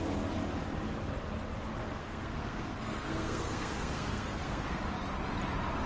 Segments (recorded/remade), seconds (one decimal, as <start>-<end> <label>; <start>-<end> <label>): 0.0-1.8 recorded; 1.8-4.8 remade; 4.8-5.9 recorded